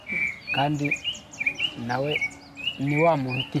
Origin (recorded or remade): recorded